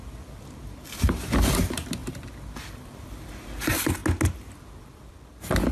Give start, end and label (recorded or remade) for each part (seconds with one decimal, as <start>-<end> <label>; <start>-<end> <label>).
0.0-5.7 recorded